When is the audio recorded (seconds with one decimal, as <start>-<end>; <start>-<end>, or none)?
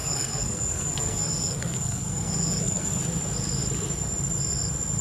3.0-5.0